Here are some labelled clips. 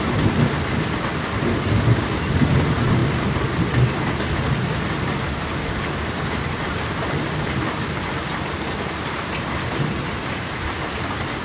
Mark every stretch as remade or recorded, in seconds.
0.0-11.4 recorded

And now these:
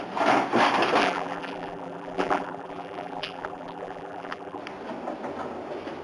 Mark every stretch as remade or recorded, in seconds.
0.0-1.0 recorded; 1.0-4.6 remade; 4.6-6.0 recorded

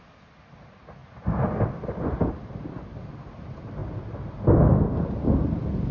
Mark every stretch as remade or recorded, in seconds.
0.0-5.9 recorded

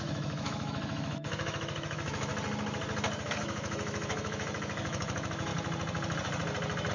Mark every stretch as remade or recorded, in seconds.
0.0-2.3 remade; 2.3-3.2 recorded; 3.2-5.5 remade; 5.5-6.9 recorded

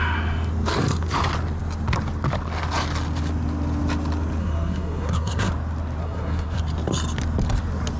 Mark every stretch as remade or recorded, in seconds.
0.0-4.4 recorded; 4.4-5.5 remade; 5.5-6.0 recorded; 6.0-6.6 remade; 6.6-8.0 recorded